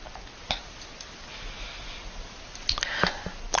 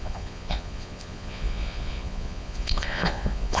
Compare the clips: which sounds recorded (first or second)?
first